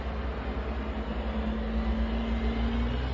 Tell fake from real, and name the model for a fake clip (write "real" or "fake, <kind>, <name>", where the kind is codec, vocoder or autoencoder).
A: real